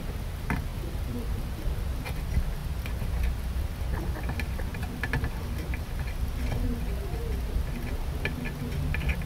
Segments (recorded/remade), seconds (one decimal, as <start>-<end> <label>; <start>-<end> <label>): 0.0-0.7 recorded; 0.7-1.8 remade; 1.8-4.7 recorded; 4.7-5.8 remade; 5.8-9.3 recorded